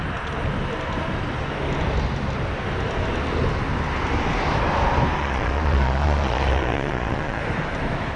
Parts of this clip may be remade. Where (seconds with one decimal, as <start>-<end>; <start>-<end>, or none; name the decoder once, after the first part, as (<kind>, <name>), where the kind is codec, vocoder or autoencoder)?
5.2-7.4 (vocoder, Vocos)

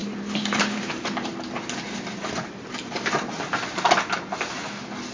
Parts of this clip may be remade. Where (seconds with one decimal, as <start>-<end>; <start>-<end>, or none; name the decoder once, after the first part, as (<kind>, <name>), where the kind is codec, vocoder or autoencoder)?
0.0-3.1 (vocoder, BigVGAN v2)

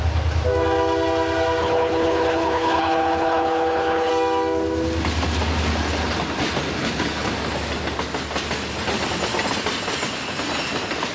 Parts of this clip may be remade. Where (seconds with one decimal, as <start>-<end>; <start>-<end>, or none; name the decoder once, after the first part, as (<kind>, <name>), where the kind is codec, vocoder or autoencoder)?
1.6-4.1 (codec, HILCodec); 6.8-7.3

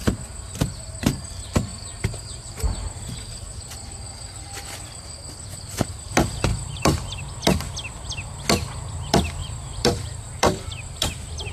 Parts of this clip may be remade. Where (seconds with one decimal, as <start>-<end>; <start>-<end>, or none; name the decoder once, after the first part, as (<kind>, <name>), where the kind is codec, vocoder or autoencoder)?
1.7-2.8 (vocoder, BigVGAN v2); 6.5-7.2; 9.4-11.1

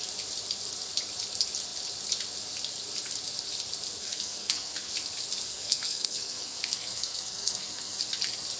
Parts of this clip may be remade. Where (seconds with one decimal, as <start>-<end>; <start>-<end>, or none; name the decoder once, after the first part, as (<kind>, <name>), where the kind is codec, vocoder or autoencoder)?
4.0-4.9 (codec, SNAC); 5.5-8.0

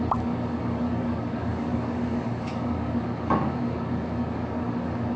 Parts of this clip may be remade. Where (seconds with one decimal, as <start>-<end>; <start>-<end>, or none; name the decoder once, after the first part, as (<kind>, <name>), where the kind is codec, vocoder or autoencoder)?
0.0-5.2 (codec, DAC)

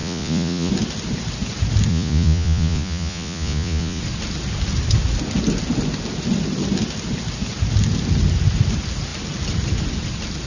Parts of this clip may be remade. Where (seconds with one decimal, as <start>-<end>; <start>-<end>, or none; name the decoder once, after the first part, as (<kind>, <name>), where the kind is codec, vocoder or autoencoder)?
0.0-0.7 (vocoder, Vocos); 1.9-4.0